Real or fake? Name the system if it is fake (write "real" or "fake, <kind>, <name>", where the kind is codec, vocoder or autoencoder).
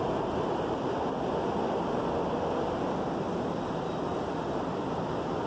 real